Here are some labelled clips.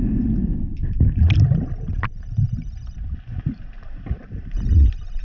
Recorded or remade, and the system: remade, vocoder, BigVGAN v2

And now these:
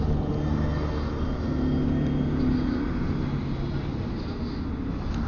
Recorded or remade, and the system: recorded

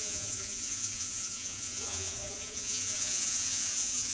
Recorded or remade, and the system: remade, vocoder, Vocos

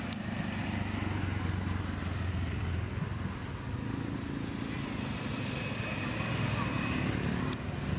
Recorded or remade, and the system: recorded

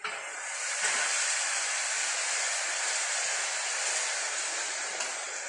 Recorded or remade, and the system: recorded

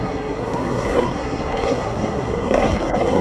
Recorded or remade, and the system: remade, codec, SNAC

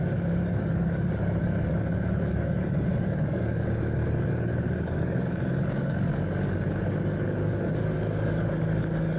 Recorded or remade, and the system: remade, codec, DAC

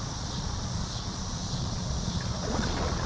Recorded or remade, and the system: remade, vocoder, Vocos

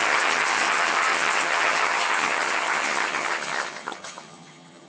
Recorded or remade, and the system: remade, vocoder, HiFi-GAN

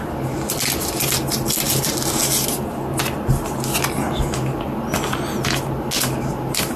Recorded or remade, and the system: recorded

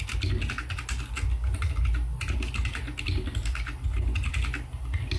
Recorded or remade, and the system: recorded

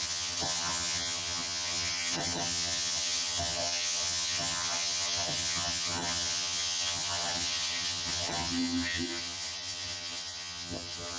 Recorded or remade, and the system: remade, vocoder, HiFi-GAN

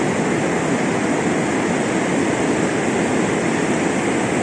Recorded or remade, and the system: recorded